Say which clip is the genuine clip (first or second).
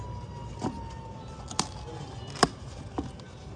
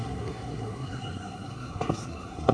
first